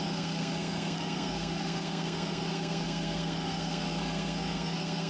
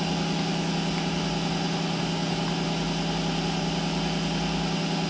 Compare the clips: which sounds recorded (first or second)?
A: second